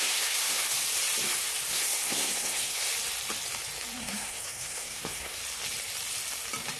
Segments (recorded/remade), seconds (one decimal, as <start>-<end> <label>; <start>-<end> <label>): 0.0-0.6 remade; 0.6-1.7 recorded; 1.7-2.9 remade; 2.9-4.0 recorded; 4.0-5.4 remade; 5.4-6.8 recorded